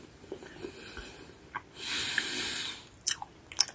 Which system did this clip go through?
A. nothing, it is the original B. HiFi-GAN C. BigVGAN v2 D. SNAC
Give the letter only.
A